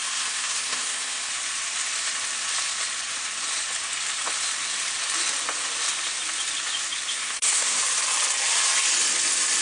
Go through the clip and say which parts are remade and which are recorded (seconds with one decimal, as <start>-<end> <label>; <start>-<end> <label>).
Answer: 0.0-1.3 remade; 1.3-7.1 recorded; 7.1-7.8 remade; 7.8-9.6 recorded